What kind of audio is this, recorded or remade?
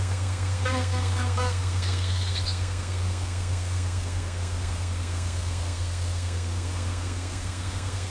remade